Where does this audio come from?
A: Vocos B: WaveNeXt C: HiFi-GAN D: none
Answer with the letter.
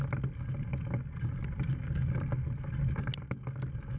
D